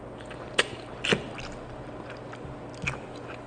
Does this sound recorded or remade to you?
recorded